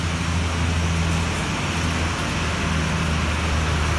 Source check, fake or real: real